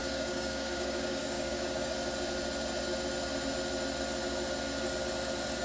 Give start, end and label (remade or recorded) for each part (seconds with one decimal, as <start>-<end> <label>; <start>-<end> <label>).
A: 0.0-1.9 remade; 1.9-5.6 recorded